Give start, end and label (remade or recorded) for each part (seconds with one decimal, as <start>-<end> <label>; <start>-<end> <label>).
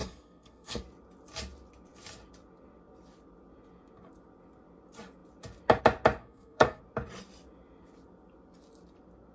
0.0-0.8 remade; 0.8-6.2 recorded; 6.2-6.8 remade; 6.8-9.3 recorded